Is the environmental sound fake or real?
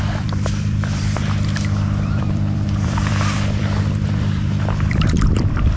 fake